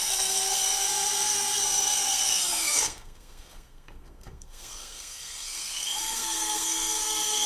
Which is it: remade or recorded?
remade